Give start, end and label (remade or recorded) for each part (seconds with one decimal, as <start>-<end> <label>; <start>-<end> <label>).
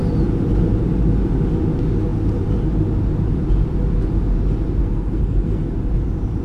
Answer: 0.0-4.8 recorded; 4.8-5.7 remade; 5.7-6.4 recorded